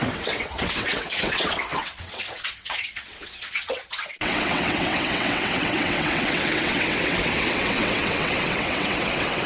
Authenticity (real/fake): fake